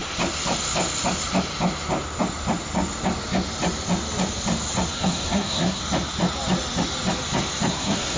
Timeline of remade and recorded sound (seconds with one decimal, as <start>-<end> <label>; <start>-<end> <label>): 0.0-4.9 recorded; 4.9-5.8 remade; 5.8-7.7 recorded; 7.7-8.2 remade